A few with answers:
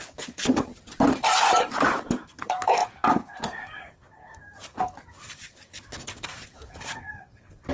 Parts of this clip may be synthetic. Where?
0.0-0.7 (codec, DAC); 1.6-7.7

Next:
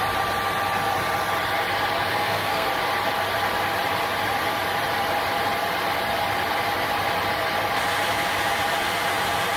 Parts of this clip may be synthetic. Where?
2.1-2.7 (codec, SNAC)

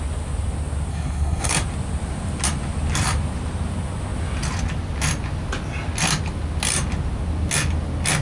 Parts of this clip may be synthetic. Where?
0.9-1.5 (codec, SNAC)

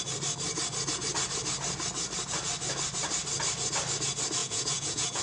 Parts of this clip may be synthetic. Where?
4.4-5.2 (vocoder, Vocos)